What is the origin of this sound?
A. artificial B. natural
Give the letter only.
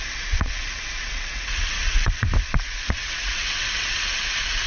A